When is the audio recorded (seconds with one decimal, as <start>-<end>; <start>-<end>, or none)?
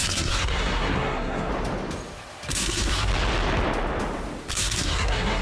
1.5-2.5; 3.1-4.5